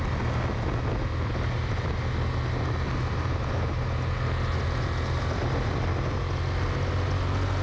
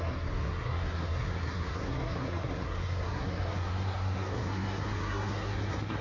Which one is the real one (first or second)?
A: first